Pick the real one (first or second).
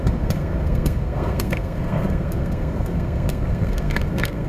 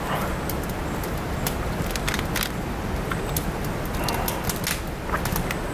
second